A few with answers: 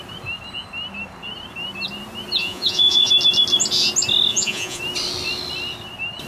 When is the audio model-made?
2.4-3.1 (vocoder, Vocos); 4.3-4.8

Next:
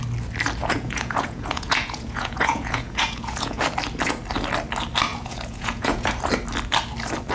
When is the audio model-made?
0.6-3.6 (vocoder, Vocos); 5.1-6.1